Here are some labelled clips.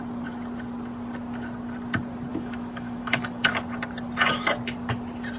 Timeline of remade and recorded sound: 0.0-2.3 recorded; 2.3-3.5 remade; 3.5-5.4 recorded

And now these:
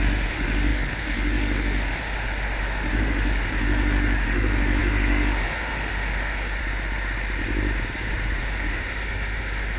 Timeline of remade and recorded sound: 0.0-6.6 remade; 6.6-8.4 recorded; 8.4-9.8 remade

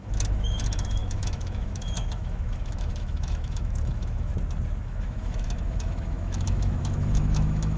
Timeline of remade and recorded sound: 0.0-4.3 remade; 4.3-4.8 recorded; 4.8-7.8 remade

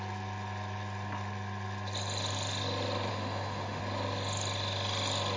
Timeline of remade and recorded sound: 0.0-3.1 recorded; 3.1-3.8 remade; 3.8-5.4 recorded

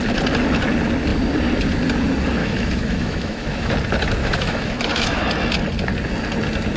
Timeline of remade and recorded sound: 0.0-2.4 recorded; 2.4-3.7 remade; 3.7-4.2 recorded; 4.2-5.2 remade; 5.2-6.8 recorded

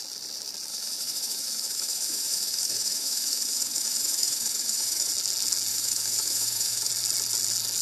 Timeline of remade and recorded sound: 0.0-0.7 recorded; 0.7-5.1 remade; 5.1-5.7 recorded; 5.7-6.9 remade; 6.9-7.8 recorded

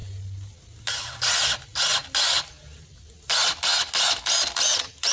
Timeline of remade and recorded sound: 0.0-5.1 recorded

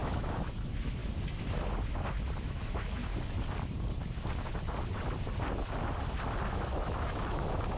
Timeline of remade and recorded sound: 0.0-1.0 remade; 1.0-2.4 recorded; 2.4-3.0 remade; 3.0-6.5 recorded; 6.5-7.8 remade